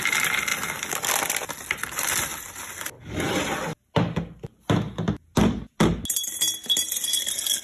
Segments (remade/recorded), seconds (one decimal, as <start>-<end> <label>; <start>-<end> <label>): 0.0-7.6 recorded